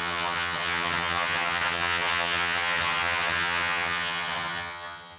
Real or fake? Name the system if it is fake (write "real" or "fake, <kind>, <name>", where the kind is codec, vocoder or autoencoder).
fake, vocoder, HiFi-GAN